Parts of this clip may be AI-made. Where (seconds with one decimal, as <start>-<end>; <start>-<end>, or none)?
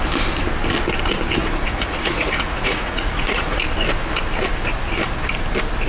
1.4-3.6